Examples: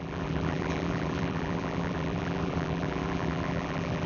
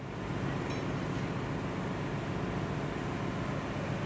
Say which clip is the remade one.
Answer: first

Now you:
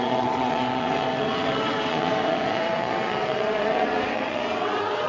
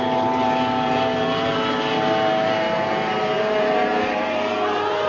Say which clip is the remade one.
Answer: first